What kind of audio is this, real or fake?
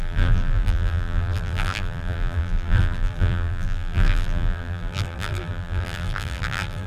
fake